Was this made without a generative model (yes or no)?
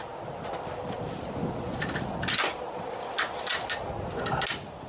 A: yes